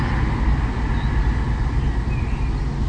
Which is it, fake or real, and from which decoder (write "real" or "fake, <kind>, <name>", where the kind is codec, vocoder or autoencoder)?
real